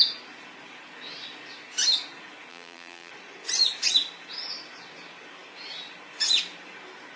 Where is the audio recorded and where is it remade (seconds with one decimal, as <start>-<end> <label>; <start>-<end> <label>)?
0.0-2.5 recorded; 2.5-3.1 remade; 3.1-7.2 recorded

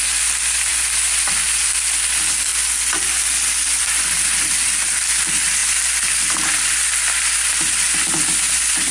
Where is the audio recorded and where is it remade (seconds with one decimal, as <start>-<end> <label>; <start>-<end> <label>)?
0.0-8.9 recorded